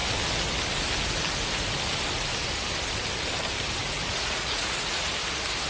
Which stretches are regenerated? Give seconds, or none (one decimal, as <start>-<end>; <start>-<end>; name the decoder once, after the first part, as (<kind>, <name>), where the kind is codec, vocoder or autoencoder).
3.8-5.1 (vocoder, Vocos)